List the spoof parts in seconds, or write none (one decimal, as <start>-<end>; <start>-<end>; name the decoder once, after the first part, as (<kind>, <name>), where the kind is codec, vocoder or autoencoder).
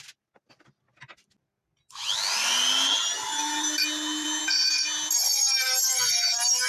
none